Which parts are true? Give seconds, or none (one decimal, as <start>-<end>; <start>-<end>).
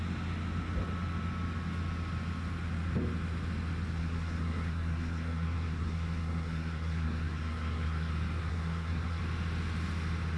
0.0-4.0; 8.1-8.5; 9.2-10.4